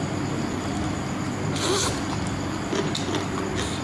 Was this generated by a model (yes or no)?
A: no